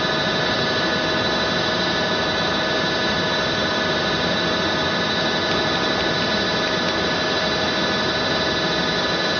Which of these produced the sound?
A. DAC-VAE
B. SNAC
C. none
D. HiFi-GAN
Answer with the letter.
C